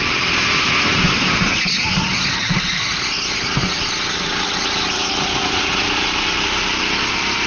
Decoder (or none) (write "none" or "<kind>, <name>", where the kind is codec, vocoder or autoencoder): none